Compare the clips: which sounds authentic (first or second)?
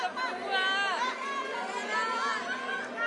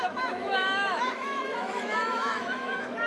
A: first